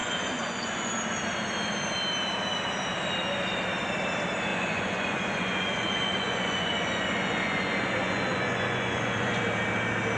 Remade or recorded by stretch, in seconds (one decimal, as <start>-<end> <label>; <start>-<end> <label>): 0.0-0.9 remade; 0.9-4.5 recorded; 4.5-9.4 remade; 9.4-10.2 recorded